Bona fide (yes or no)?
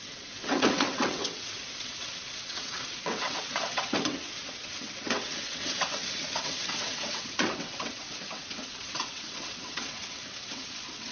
no